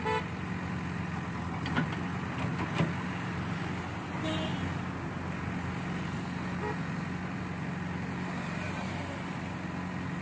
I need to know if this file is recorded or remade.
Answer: recorded